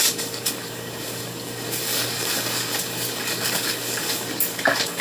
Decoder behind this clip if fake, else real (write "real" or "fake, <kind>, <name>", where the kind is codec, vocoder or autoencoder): fake, codec, DAC